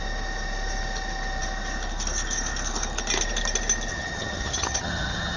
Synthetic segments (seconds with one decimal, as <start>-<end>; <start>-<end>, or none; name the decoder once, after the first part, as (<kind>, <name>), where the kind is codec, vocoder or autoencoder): 3.9-5.4 (vocoder, HiFi-GAN)